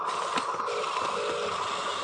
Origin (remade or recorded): recorded